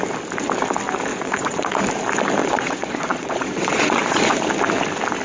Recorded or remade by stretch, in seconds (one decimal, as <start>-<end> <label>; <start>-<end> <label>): 0.0-1.1 recorded; 1.1-1.8 remade; 1.8-2.4 recorded; 2.4-4.2 remade; 4.2-5.2 recorded